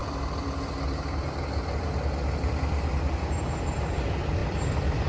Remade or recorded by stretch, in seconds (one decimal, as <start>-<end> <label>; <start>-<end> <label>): 0.0-5.1 recorded